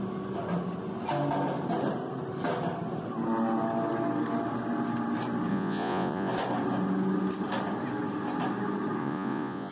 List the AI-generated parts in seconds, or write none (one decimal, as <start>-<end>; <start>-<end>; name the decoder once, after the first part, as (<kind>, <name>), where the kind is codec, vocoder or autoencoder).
5.5-6.3 (vocoder, Vocos); 9.0-9.7